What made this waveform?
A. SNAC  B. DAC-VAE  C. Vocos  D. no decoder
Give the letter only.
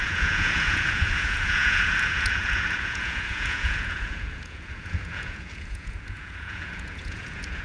C